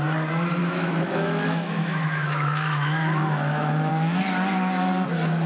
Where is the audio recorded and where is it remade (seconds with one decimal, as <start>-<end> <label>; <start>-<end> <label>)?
0.0-0.6 recorded; 0.6-3.9 remade; 3.9-5.5 recorded